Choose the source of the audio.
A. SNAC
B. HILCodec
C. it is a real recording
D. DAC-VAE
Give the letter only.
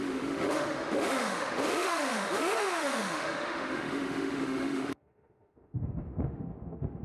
D